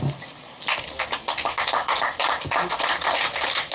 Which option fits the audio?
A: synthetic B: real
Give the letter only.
B